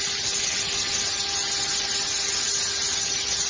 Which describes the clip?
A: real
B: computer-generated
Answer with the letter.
A